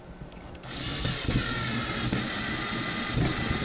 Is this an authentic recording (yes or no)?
yes